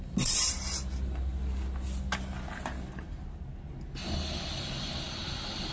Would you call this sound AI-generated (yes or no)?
no